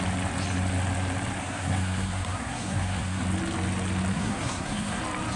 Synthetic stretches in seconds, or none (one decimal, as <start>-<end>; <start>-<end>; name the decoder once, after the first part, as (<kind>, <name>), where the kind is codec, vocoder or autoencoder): 1.4-3.2 (codec, SNAC); 4.1-5.0